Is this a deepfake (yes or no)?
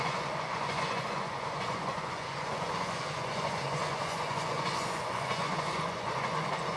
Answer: yes